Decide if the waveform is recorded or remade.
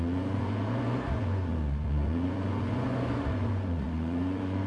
remade